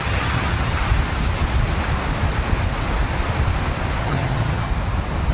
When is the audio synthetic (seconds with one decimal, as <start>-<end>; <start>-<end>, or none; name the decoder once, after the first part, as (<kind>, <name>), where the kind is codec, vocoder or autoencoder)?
0.0-0.8 (vocoder, HiFi-GAN); 4.0-4.7